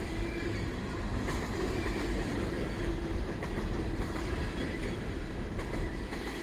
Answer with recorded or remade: remade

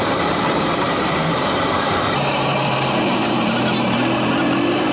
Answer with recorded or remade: remade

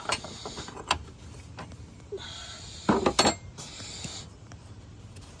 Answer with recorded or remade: recorded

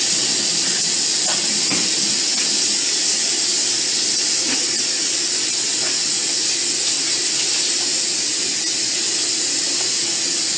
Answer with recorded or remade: recorded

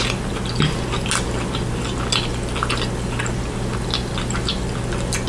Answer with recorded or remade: recorded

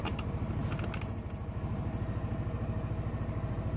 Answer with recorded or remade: recorded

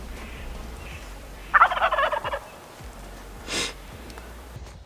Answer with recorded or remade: remade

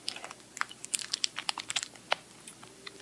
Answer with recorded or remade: remade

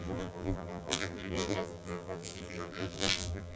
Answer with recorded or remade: remade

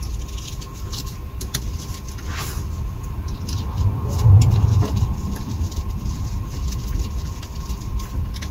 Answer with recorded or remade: remade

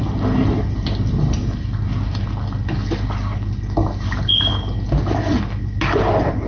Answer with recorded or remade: recorded